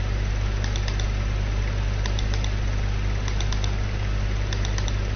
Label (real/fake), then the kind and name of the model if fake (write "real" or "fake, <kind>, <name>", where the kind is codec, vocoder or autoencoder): real